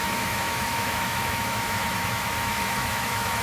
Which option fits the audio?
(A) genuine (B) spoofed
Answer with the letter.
B